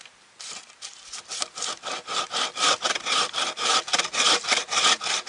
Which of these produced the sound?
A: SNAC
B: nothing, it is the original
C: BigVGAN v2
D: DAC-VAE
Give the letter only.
C